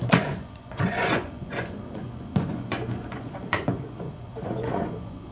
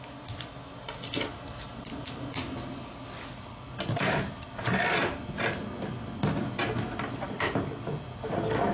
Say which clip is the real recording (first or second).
second